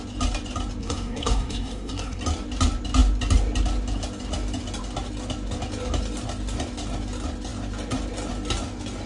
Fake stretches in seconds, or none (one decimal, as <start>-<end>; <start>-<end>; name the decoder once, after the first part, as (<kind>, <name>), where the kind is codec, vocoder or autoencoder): 0.8-2.2 (codec, SNAC)